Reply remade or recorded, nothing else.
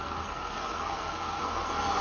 remade